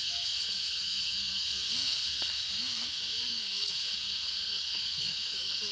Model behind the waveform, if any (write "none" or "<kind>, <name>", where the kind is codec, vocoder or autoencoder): codec, SNAC